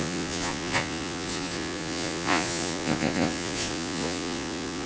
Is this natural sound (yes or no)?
no